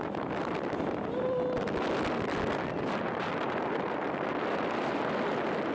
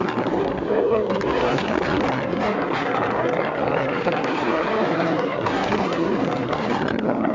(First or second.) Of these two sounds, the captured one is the first